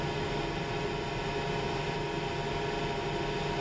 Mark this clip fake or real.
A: real